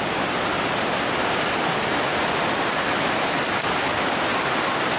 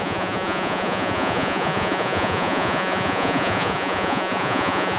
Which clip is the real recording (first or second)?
first